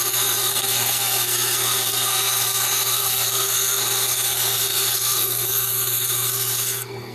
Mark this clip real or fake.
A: fake